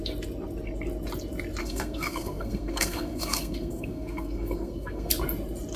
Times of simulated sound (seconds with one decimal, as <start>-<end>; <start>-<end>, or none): 1.6-5.1

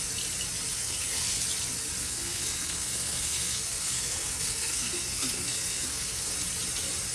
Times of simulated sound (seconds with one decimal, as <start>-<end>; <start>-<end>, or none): 0.7-1.4; 2.0-6.3

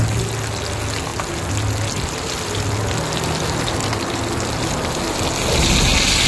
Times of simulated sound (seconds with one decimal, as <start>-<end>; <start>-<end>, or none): none